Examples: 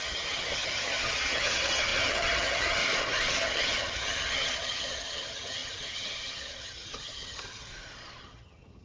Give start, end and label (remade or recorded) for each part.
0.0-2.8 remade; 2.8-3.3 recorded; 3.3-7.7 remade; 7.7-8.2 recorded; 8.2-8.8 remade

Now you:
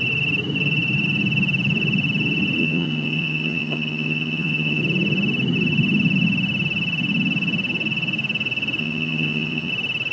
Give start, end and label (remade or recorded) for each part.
0.0-2.6 recorded; 2.6-4.8 remade; 4.8-8.8 recorded; 8.8-9.7 remade; 9.7-10.1 recorded

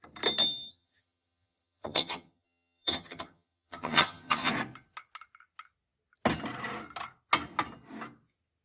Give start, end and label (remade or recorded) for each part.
0.0-0.7 recorded; 0.7-4.5 remade; 4.5-8.6 recorded

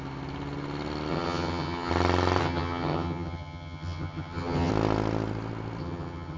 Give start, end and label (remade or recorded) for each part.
0.0-1.1 recorded; 1.1-1.9 remade; 1.9-2.4 recorded; 2.4-4.7 remade; 4.7-5.8 recorded; 5.8-6.4 remade